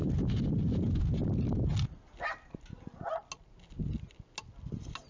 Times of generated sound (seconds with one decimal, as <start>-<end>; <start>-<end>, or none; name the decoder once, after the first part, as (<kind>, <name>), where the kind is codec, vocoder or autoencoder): none